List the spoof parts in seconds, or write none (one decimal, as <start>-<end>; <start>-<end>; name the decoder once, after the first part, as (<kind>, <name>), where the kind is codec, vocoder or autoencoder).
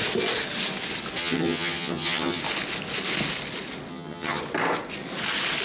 1.2-2.4 (vocoder, HiFi-GAN); 3.9-4.4